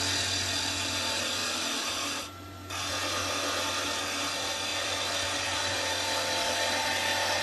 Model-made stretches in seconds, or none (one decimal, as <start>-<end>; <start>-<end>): 4.7-5.9